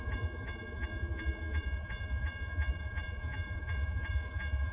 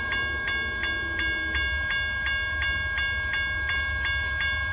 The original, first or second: second